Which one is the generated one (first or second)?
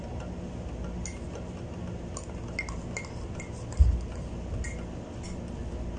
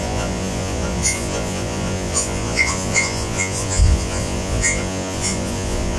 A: second